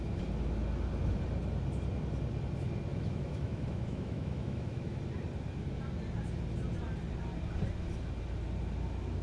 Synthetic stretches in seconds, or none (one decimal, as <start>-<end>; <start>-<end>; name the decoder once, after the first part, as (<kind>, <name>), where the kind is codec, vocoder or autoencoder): 2.9-5.0 (autoencoder, DAC-VAE)